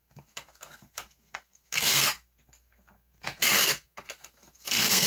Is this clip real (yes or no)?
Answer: no